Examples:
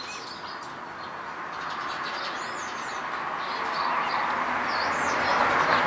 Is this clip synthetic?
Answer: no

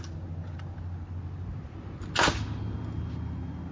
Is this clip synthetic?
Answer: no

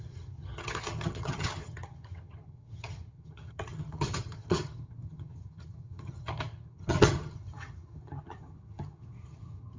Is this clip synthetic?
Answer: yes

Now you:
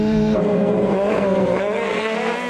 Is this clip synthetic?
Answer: yes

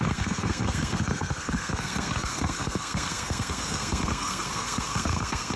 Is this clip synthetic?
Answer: yes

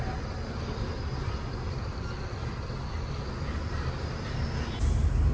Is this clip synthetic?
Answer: no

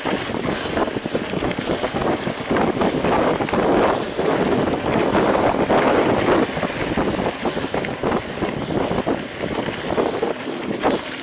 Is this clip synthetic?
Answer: no